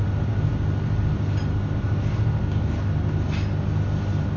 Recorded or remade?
recorded